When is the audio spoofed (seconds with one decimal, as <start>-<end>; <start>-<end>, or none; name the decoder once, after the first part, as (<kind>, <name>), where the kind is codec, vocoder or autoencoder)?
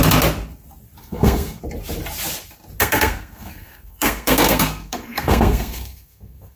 1.0-1.6 (codec, SNAC); 2.8-6.6